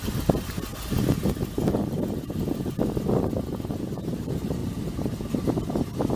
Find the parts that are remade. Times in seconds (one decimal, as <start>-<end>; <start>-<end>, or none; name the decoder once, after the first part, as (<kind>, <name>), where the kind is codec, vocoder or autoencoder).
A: 4.6-5.1 (vocoder, BigVGAN v2)